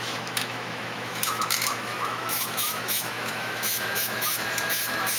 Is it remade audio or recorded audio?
remade